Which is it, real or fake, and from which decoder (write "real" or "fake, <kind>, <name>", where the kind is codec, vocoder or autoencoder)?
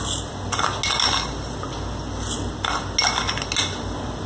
real